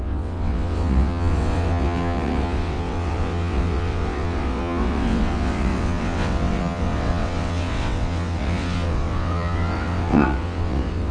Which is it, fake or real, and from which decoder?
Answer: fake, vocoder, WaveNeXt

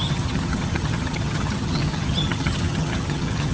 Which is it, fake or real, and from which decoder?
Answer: fake, vocoder, HiFi-GAN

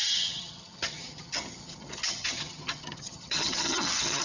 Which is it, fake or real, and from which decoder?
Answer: fake, vocoder, HiFi-GAN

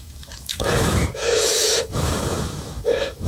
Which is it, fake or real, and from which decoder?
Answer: fake, autoencoder, DAC-VAE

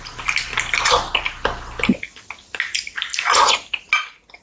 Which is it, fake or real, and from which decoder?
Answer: real